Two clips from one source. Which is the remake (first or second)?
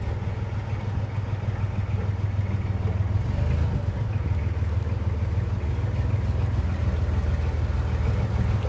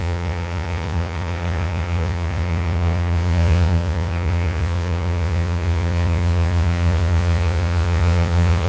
second